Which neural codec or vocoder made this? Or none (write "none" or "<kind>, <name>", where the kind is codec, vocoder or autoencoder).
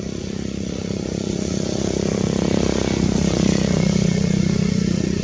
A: vocoder, Vocos